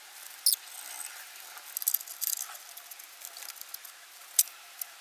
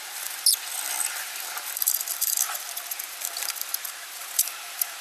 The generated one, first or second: second